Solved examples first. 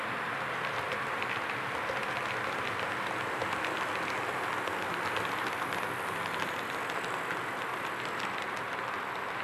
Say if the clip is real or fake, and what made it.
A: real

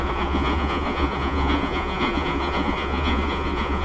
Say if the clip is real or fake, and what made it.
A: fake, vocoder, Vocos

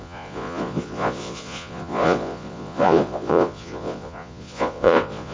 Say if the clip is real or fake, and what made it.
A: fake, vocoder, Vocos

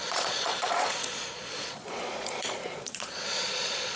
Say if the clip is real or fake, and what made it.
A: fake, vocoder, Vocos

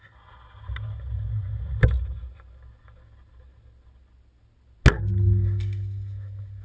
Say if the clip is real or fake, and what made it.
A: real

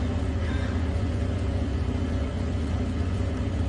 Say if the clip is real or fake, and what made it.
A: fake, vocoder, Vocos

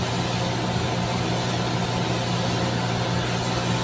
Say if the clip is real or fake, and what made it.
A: real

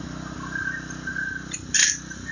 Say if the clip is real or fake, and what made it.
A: real